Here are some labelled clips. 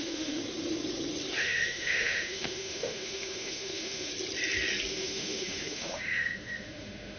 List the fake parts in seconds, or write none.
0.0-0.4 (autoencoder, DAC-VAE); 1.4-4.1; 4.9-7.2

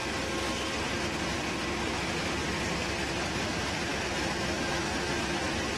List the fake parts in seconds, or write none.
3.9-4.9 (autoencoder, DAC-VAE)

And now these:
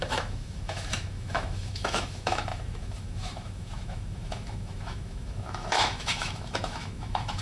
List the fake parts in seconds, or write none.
0.0-7.4 (autoencoder, DAC-VAE)